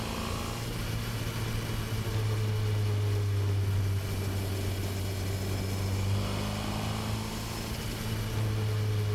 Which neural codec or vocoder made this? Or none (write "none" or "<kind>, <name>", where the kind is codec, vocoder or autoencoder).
none